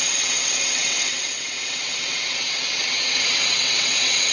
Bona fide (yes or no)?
no